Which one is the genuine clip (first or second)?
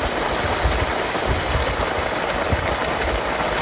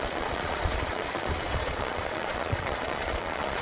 first